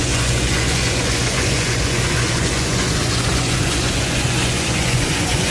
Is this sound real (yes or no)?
no